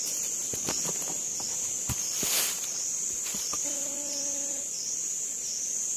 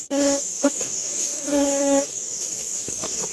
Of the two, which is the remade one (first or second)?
second